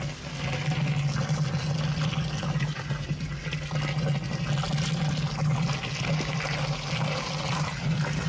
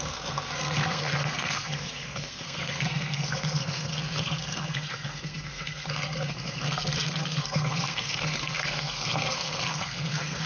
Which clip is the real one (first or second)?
first